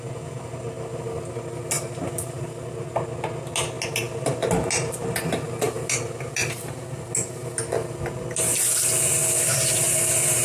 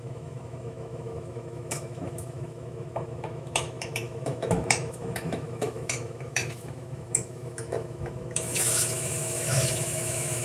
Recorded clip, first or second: first